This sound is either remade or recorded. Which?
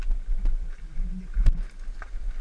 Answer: recorded